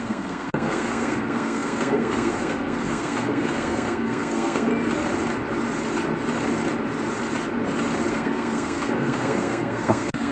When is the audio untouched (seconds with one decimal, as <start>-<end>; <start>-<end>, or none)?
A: 4.7-8.1

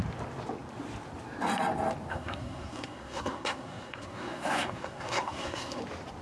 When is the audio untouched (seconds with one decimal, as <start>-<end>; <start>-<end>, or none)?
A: 0.0-2.1; 5.8-6.2

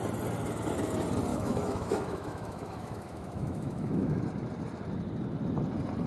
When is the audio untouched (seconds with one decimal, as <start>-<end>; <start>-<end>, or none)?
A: 0.0-1.3; 4.2-6.1

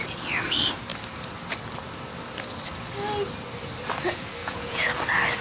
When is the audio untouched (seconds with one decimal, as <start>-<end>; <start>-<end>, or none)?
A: 0.0-4.4; 4.9-5.4

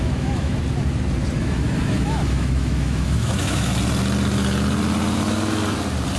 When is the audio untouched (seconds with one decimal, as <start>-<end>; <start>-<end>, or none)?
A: 0.6-1.4; 3.7-6.2

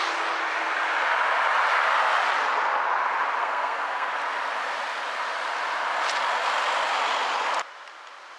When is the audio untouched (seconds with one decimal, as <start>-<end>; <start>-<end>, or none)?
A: 0.0-3.4; 4.1-8.4

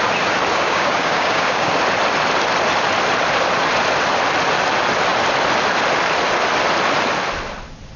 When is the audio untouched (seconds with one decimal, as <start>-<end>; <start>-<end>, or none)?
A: 0.0-0.5; 1.7-8.0